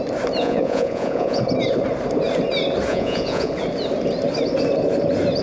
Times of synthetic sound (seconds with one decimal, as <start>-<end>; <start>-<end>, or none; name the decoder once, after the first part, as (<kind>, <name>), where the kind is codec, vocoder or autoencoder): 0.4-1.4 (vocoder, Vocos); 2.9-3.5